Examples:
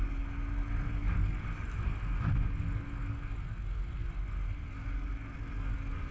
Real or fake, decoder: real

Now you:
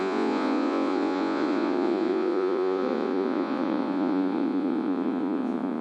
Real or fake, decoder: fake, vocoder, Vocos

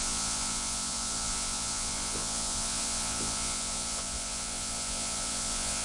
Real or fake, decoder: fake, vocoder, Vocos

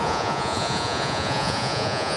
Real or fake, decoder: fake, vocoder, Vocos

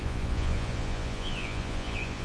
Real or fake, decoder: fake, vocoder, Vocos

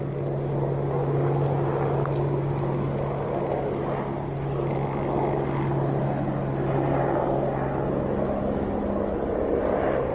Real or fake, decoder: real